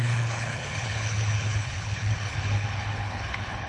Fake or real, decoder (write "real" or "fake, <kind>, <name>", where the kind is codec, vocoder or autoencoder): fake, codec, HILCodec